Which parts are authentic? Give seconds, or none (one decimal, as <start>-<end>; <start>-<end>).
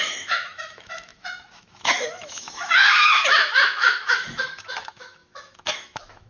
none